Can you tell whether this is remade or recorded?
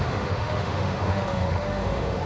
remade